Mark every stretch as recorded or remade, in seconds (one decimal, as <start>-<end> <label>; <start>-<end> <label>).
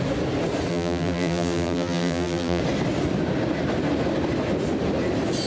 0.0-0.7 recorded; 0.7-2.6 remade; 2.6-5.5 recorded